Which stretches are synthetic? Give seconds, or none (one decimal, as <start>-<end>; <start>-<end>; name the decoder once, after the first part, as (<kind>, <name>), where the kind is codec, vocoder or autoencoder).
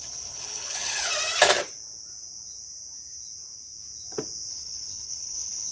0.0-1.1 (codec, HILCodec); 4.5-5.7